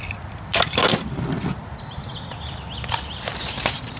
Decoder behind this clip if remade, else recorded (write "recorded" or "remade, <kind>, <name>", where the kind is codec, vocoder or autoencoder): recorded